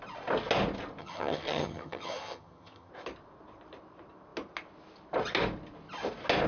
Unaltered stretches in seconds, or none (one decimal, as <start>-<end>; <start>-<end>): 0.0-1.0; 2.9-6.5